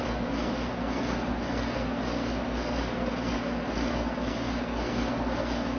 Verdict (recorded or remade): remade